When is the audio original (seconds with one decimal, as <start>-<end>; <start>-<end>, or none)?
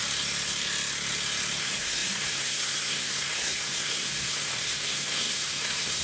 0.0-1.6